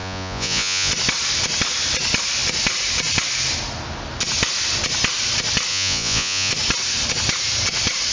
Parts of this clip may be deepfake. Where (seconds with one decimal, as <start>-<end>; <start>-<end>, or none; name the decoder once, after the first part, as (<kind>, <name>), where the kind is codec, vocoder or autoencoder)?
0.0-0.9 (vocoder, Vocos); 5.7-6.5